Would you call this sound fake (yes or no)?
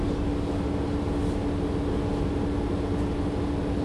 no